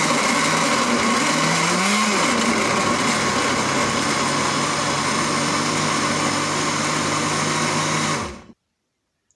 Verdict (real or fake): real